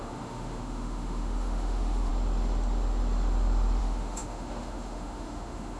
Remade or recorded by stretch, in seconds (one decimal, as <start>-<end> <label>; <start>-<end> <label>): 0.0-2.1 remade; 2.1-3.8 recorded; 3.8-5.8 remade